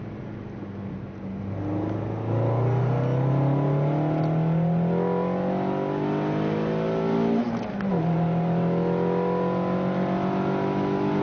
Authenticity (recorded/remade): recorded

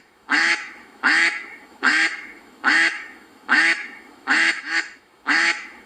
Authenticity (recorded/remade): remade